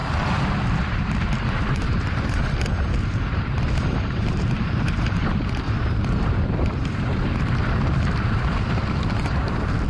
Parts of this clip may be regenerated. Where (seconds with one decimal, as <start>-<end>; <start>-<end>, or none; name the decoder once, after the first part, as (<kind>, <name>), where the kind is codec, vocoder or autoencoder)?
0.0-9.9 (vocoder, BigVGAN v2)